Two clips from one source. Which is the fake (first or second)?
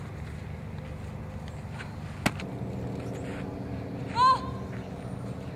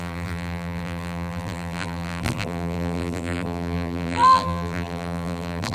second